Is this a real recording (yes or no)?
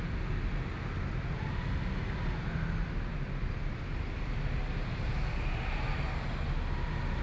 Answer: yes